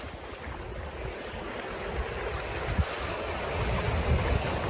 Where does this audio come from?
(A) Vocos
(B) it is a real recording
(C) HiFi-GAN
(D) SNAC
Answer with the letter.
B